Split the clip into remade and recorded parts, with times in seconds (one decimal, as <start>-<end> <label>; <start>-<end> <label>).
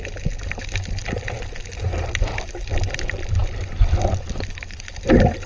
0.0-3.4 recorded; 3.4-3.9 remade; 3.9-5.5 recorded